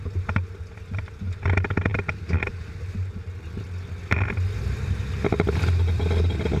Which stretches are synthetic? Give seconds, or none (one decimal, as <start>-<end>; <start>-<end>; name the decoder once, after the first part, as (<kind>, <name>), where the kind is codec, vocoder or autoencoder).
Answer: 0.0-1.9 (vocoder, BigVGAN v2); 5.0-6.6